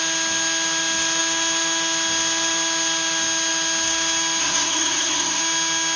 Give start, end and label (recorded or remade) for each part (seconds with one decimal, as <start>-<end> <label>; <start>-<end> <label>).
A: 0.0-4.4 recorded; 4.4-5.4 remade; 5.4-6.0 recorded